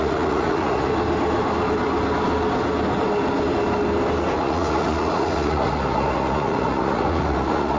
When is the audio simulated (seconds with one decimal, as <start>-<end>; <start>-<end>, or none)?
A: 0.0-0.9; 4.3-7.8